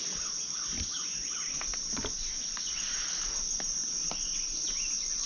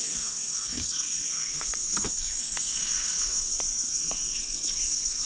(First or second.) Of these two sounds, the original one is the first